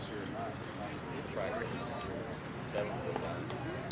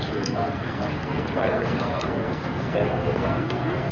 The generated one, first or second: second